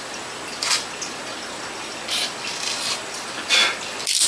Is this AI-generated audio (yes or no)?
no